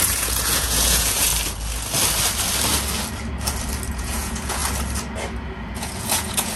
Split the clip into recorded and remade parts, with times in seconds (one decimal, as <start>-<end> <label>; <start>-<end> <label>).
0.0-1.3 remade; 1.3-3.9 recorded; 3.9-4.6 remade; 4.6-5.8 recorded; 5.8-6.6 remade